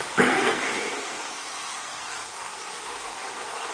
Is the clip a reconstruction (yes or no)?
yes